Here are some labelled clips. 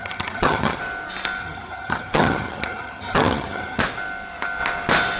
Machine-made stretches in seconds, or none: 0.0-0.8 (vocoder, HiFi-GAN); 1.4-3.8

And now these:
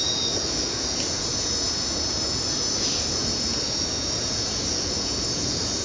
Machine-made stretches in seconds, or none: 0.0-5.8 (vocoder, Vocos)

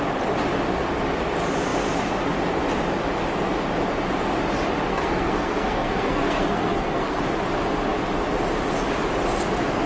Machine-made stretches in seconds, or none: 4.9-7.2 (codec, SNAC)